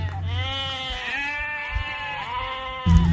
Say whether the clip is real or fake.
real